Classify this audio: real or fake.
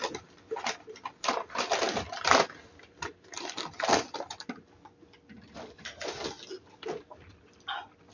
real